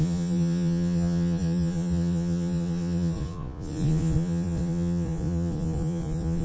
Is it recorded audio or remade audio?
remade